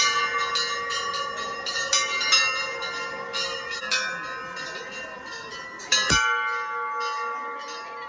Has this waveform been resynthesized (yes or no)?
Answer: no